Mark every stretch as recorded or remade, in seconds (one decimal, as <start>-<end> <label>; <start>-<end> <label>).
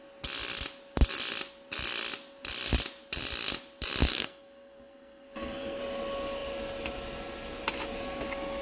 0.0-4.1 recorded; 4.1-5.8 remade; 5.8-8.6 recorded